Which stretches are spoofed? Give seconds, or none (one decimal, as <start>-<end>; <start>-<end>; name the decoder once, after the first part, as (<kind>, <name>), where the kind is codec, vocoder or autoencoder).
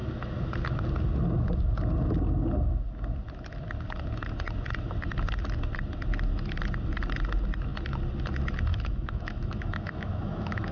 8.7-10.7 (autoencoder, DAC-VAE)